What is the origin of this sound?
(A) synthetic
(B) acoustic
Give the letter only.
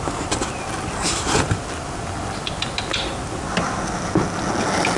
B